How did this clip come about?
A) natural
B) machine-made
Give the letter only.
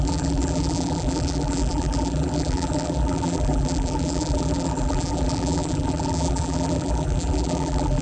B